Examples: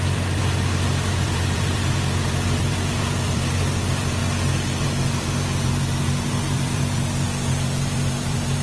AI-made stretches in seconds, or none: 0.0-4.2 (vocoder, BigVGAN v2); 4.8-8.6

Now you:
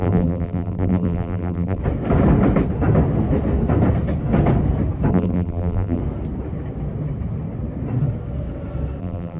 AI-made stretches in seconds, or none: 0.0-1.8 (vocoder, BigVGAN v2); 5.1-6.0; 9.0-9.4

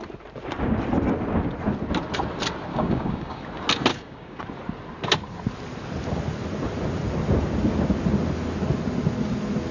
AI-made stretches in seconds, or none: 2.7-3.4 (codec, DAC); 3.9-4.4

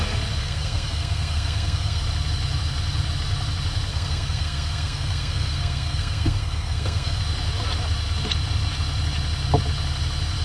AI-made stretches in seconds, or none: 0.4-2.0 (codec, SNAC); 3.9-7.2

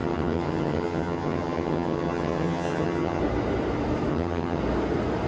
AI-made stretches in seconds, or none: 0.0-3.2 (vocoder, HiFi-GAN); 4.1-4.6

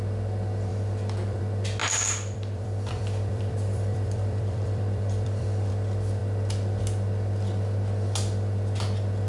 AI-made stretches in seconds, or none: 0.7-1.4 (vocoder, BigVGAN v2); 1.8-5.7